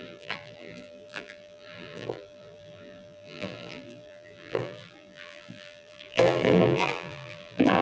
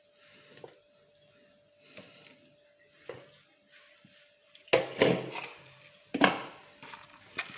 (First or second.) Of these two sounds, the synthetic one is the first